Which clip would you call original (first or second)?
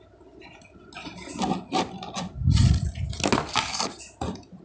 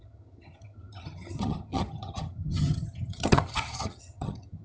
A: first